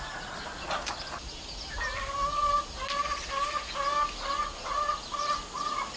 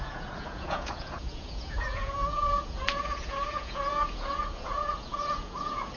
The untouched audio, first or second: first